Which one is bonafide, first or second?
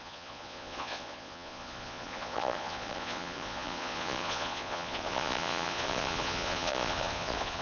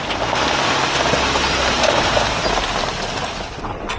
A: second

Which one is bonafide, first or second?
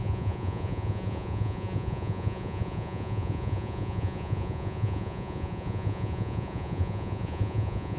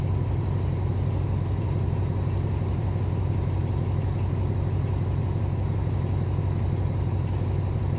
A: second